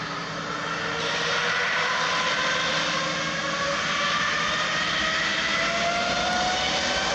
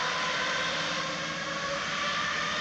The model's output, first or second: second